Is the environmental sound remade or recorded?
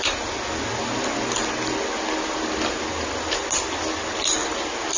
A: recorded